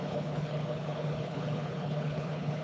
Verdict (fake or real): fake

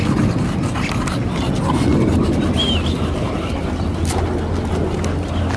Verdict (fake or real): real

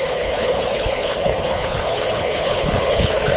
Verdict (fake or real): fake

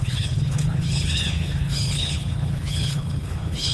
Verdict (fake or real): fake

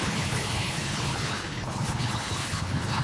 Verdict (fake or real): fake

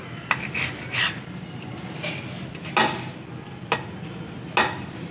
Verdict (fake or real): real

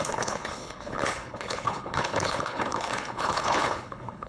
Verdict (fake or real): fake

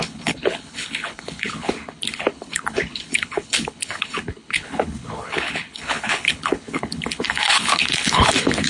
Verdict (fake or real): fake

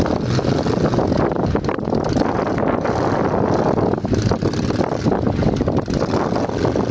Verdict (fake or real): real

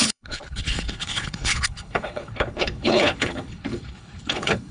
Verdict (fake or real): fake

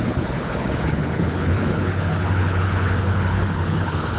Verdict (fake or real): fake